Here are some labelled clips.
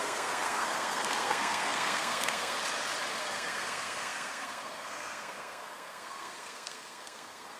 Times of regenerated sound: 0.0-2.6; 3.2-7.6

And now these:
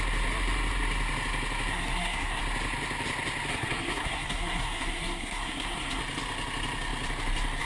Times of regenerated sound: 1.7-2.4; 3.5-6.0

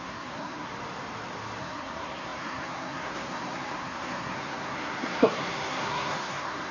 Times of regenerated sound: 0.0-0.7; 1.6-6.7